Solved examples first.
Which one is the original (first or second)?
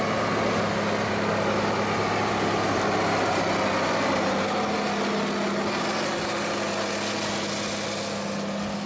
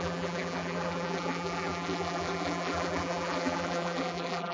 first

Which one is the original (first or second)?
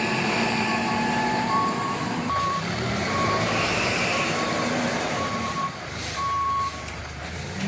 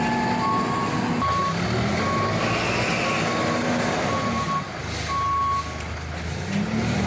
second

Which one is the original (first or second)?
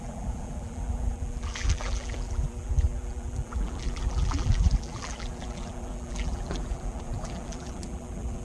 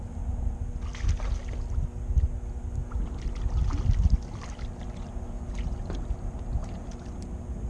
second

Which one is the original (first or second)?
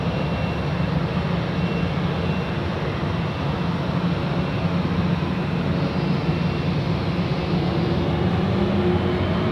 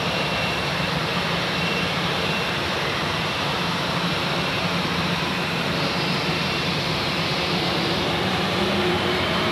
first